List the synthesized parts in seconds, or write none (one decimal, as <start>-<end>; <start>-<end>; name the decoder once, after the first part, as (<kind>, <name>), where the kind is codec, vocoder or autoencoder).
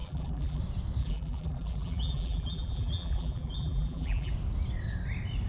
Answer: 0.0-0.6 (vocoder, BigVGAN v2); 1.0-4.3